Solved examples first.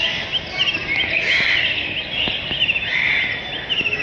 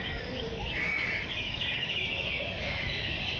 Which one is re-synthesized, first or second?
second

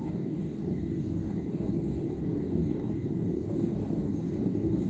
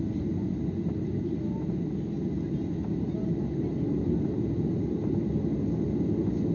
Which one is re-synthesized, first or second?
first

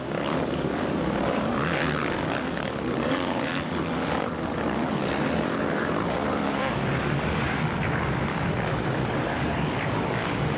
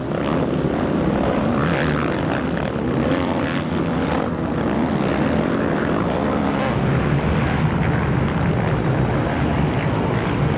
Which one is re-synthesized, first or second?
first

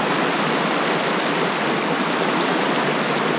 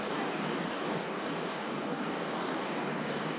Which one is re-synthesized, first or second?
second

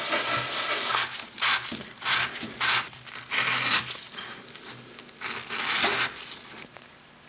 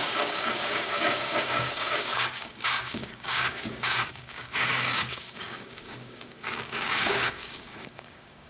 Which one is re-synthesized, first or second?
second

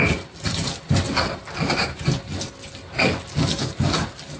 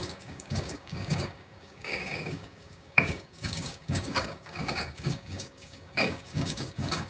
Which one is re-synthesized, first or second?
second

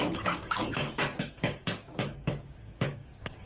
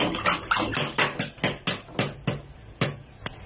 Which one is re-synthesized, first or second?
first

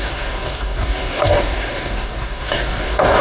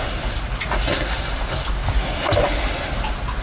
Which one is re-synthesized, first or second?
first